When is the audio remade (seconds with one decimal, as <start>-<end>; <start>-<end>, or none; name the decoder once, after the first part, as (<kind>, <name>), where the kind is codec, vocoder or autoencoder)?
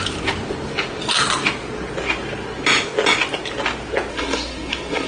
4.1-5.1 (codec, SNAC)